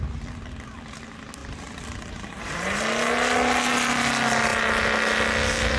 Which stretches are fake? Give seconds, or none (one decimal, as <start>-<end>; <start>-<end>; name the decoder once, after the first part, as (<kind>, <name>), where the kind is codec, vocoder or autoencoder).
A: 1.4-2.8 (vocoder, BigVGAN v2)